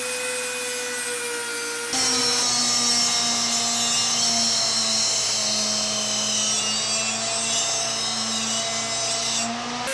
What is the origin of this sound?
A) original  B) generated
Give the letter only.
A